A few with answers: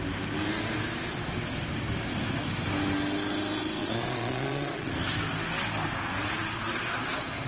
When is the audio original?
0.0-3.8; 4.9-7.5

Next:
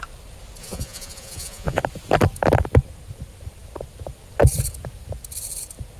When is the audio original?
0.0-0.6; 1.8-6.0